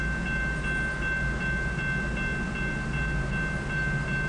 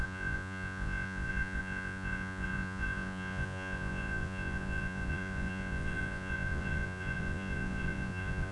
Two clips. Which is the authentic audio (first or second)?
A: first